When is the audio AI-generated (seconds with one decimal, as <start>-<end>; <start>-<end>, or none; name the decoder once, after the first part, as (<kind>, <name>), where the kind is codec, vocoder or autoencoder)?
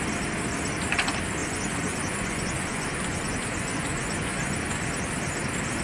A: 1.4-4.9 (vocoder, Vocos)